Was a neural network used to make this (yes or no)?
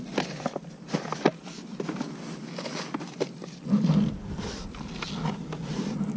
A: no